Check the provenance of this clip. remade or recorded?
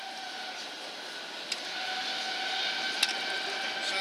recorded